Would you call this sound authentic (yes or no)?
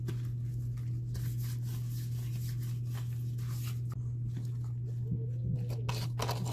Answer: yes